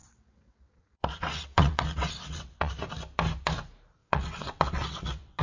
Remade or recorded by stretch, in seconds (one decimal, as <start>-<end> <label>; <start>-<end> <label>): 0.0-2.7 remade; 2.7-4.0 recorded; 4.0-5.4 remade